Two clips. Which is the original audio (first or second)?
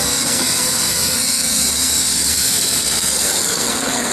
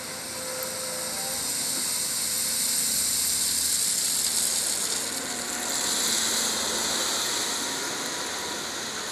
second